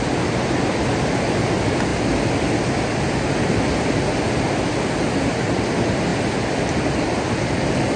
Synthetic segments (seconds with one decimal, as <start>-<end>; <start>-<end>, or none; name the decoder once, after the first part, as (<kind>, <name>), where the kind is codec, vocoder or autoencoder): none